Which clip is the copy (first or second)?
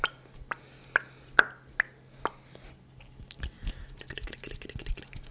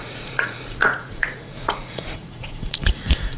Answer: second